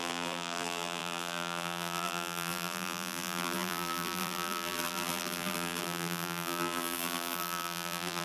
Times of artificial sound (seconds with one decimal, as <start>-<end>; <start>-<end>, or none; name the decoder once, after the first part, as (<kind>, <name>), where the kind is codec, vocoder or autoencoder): 0.0-8.2 (vocoder, BigVGAN v2)